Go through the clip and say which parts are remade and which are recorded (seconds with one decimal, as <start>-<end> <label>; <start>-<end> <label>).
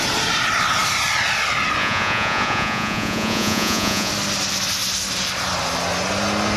0.0-1.8 recorded; 1.8-4.1 remade; 4.1-6.6 recorded